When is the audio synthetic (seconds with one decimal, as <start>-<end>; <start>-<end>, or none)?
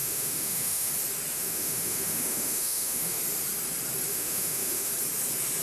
0.0-0.9; 1.3-3.2; 4.1-4.9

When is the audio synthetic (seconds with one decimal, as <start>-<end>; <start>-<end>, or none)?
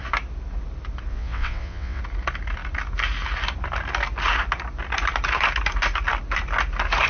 1.1-2.0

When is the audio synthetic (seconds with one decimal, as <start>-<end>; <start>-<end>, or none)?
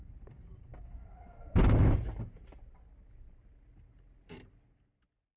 none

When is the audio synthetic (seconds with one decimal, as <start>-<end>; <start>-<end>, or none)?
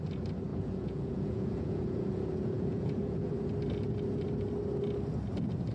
0.5-3.3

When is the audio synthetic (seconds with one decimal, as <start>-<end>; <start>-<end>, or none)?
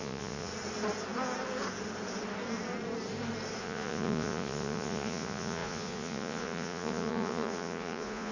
0.0-0.5; 3.6-8.3